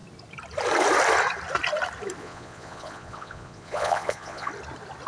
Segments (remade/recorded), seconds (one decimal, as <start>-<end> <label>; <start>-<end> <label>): 0.0-2.2 recorded; 2.2-4.5 remade; 4.5-5.1 recorded